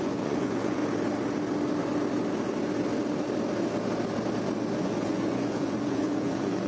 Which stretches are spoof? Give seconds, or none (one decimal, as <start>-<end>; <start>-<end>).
0.0-0.8; 4.8-6.7